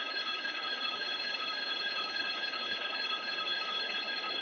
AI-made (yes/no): yes